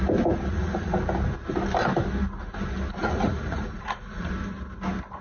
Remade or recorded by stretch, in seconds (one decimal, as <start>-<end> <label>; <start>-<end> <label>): 0.0-0.5 recorded; 0.5-1.0 remade; 1.0-3.0 recorded; 3.0-4.3 remade; 4.3-5.2 recorded